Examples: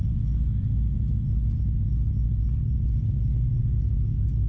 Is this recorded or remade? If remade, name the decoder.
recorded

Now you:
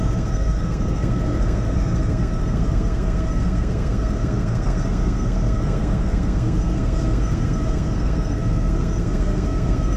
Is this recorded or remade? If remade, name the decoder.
remade, codec, SNAC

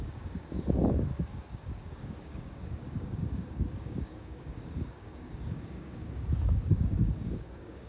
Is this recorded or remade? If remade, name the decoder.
remade, codec, DAC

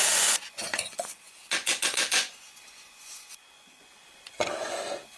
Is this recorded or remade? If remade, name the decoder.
remade, vocoder, Vocos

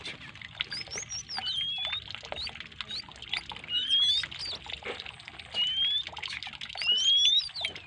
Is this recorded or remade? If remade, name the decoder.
recorded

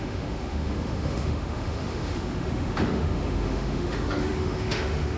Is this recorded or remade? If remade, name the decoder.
remade, autoencoder, DAC-VAE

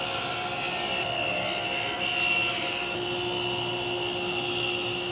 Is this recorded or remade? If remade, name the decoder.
recorded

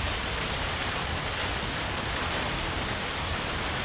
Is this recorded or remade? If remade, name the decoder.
remade, vocoder, BigVGAN v2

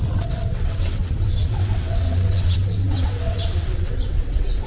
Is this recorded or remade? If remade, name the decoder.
remade, vocoder, WaveNeXt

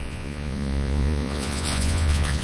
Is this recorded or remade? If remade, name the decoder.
remade, vocoder, Vocos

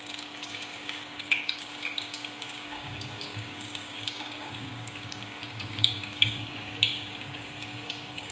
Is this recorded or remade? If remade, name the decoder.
remade, codec, DAC